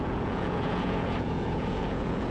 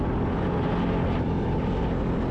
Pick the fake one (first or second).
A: first